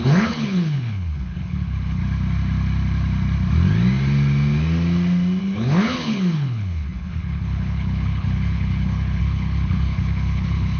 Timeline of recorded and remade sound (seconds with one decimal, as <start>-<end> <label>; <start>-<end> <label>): 0.0-2.0 remade; 2.0-5.4 recorded; 5.4-10.8 remade